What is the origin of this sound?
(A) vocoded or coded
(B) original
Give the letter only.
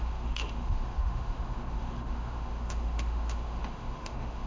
A